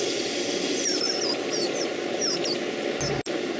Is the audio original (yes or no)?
yes